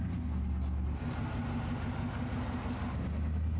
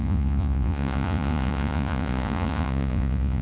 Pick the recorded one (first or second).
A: first